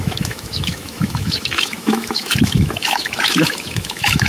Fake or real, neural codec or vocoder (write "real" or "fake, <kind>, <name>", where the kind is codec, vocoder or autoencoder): fake, autoencoder, DAC-VAE